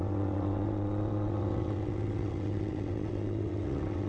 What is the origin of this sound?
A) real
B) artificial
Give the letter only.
B